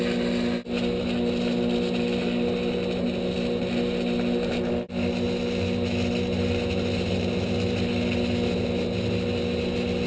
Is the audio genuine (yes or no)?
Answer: yes